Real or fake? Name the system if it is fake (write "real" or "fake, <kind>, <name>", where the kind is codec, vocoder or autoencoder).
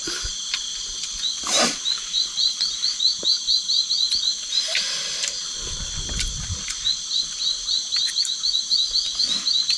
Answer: real